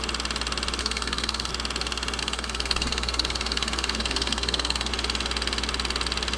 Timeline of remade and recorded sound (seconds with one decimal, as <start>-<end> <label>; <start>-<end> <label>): 0.0-0.8 recorded; 0.8-1.5 remade; 1.5-2.2 recorded; 2.2-4.9 remade; 4.9-6.4 recorded